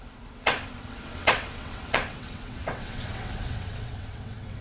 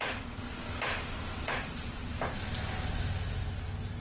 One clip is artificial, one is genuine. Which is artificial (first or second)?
first